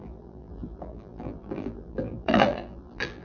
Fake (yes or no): yes